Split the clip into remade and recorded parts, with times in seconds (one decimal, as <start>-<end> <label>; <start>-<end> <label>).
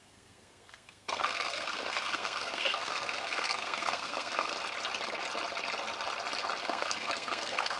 0.0-4.5 remade; 4.5-6.6 recorded; 6.6-7.8 remade